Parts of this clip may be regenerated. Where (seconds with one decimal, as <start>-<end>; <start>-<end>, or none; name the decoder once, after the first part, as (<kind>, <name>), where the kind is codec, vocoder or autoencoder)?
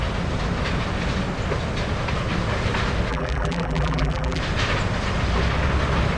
3.1-4.4 (vocoder, BigVGAN v2)